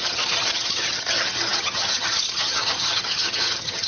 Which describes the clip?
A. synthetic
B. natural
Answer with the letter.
A